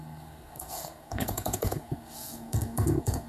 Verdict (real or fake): fake